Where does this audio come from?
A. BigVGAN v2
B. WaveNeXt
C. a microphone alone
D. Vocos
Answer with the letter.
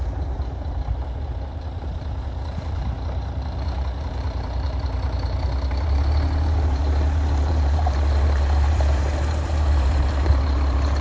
A